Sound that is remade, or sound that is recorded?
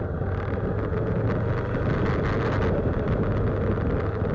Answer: recorded